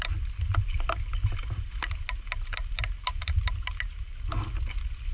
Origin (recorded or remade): recorded